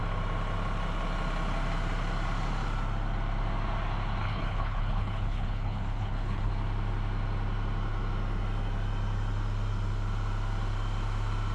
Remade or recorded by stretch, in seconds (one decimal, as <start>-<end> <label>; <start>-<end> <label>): 0.0-4.2 recorded; 4.2-6.5 remade; 6.5-11.5 recorded